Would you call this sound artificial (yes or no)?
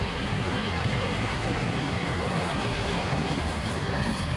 yes